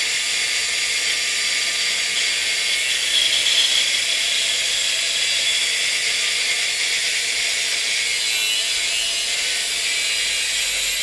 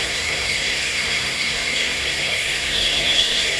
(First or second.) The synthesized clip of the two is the second